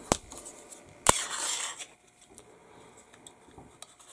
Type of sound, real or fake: real